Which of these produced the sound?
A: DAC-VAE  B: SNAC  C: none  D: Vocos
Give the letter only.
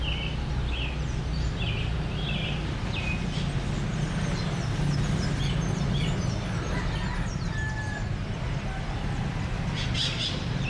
C